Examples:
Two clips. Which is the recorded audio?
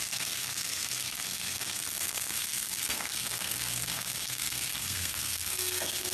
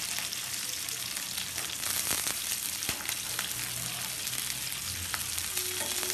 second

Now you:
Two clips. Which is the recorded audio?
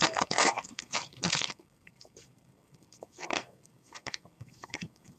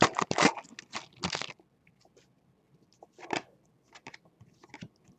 second